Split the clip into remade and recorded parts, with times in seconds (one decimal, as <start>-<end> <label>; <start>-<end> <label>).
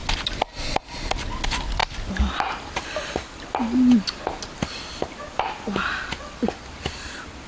0.0-7.5 recorded